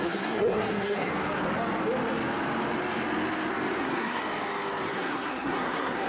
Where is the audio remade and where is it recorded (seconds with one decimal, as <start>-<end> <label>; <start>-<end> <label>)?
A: 0.0-1.1 remade; 1.1-3.8 recorded; 3.8-4.2 remade; 4.2-4.9 recorded; 4.9-6.1 remade